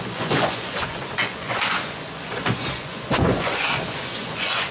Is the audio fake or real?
fake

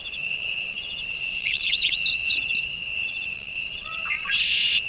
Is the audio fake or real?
fake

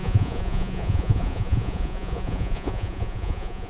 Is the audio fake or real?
fake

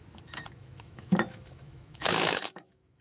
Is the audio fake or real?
fake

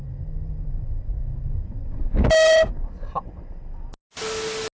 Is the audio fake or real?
real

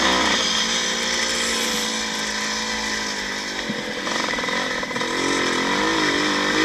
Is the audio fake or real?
real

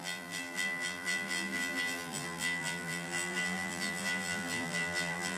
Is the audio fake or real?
fake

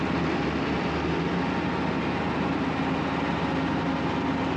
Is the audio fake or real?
real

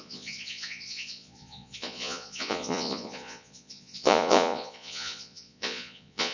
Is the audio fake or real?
fake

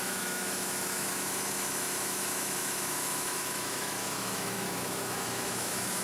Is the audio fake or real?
fake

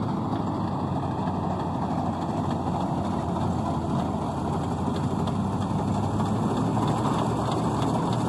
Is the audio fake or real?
real